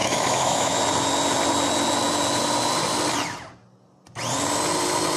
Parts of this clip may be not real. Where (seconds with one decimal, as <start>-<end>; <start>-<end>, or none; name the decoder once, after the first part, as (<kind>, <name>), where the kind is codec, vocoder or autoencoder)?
0.0-0.8 (autoencoder, DAC-VAE)